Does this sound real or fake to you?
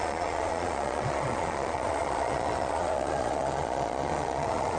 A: fake